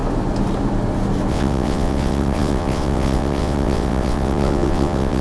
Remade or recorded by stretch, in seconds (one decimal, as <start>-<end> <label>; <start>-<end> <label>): 0.0-1.3 recorded; 1.3-5.2 remade